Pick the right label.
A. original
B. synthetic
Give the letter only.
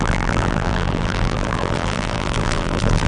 B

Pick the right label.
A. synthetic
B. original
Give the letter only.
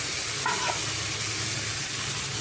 B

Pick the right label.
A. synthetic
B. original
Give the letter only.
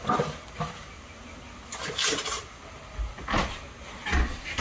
B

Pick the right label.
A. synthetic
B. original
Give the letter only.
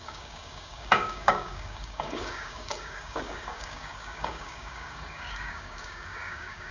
A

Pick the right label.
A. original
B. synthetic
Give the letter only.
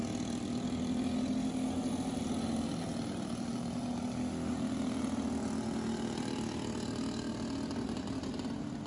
A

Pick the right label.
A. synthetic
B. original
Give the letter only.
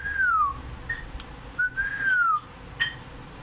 B